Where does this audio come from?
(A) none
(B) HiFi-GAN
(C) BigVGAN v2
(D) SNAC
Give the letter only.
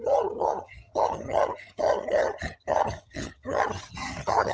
B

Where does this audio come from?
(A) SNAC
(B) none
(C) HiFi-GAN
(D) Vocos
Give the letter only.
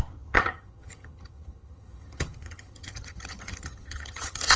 C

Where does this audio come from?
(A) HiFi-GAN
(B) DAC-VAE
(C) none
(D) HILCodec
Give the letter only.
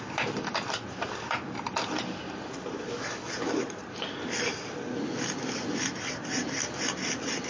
C